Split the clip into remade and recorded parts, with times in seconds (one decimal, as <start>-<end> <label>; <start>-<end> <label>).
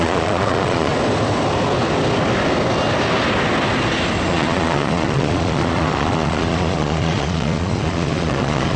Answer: 0.0-0.9 remade; 0.9-4.3 recorded; 4.3-8.8 remade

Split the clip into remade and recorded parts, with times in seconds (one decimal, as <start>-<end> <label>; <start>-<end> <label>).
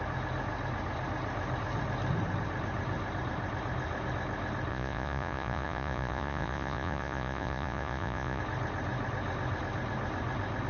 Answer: 0.0-4.7 recorded; 4.7-8.4 remade; 8.4-10.7 recorded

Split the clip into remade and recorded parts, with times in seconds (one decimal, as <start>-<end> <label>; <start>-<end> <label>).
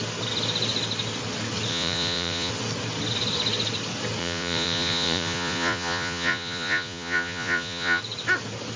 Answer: 0.0-1.7 recorded; 1.7-2.5 remade; 2.5-4.2 recorded; 4.2-8.0 remade; 8.0-8.8 recorded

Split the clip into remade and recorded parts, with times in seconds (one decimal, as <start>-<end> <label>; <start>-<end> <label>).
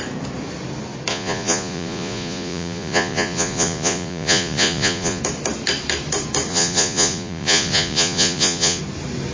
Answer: 0.0-1.1 recorded; 1.1-5.2 remade; 5.2-6.5 recorded; 6.5-8.8 remade; 8.8-9.3 recorded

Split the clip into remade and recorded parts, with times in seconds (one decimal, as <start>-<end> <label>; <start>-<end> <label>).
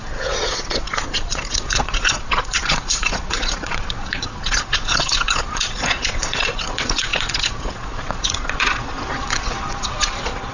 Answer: 0.0-10.5 remade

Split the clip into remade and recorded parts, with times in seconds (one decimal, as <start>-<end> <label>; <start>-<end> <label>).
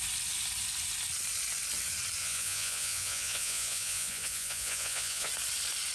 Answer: 0.0-2.2 recorded; 2.2-5.3 remade; 5.3-5.9 recorded